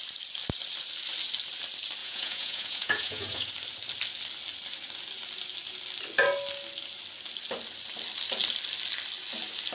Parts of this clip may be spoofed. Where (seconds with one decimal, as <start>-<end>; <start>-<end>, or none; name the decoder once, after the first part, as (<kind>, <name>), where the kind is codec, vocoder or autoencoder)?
2.0-3.5 (vocoder, Vocos)